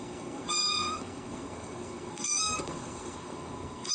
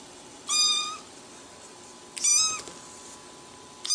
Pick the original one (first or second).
second